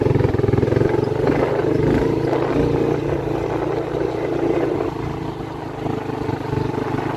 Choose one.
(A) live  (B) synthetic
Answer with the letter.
A